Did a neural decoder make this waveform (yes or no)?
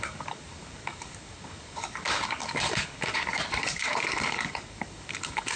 yes